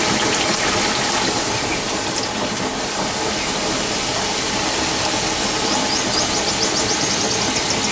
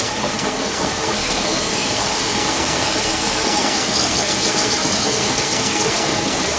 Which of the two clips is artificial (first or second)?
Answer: second